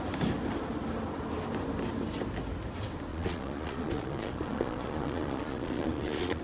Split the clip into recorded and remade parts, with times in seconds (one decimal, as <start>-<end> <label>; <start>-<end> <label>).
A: 0.0-3.1 recorded; 3.1-6.4 remade